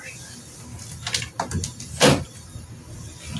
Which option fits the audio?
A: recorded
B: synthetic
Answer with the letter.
A